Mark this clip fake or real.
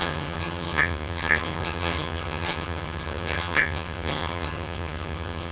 fake